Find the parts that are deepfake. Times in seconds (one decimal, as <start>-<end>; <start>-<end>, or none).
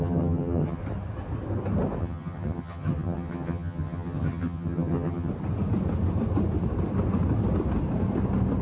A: 0.0-0.8; 2.0-5.3